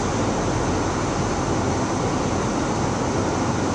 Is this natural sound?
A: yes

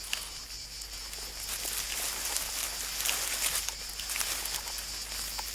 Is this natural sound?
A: yes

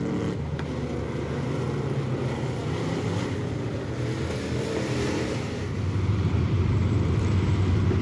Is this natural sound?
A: yes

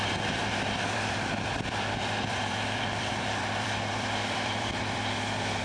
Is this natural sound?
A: no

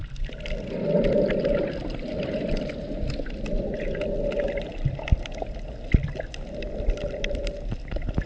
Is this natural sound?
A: no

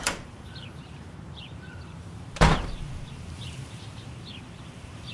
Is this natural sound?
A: no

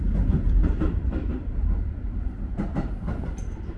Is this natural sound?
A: no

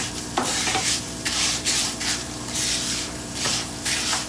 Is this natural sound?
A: no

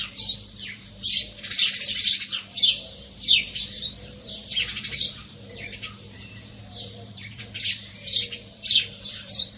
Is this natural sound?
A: no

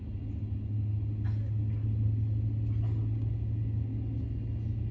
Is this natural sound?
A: yes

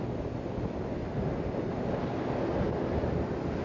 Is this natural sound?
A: yes